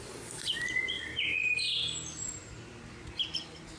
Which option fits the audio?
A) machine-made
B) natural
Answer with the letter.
B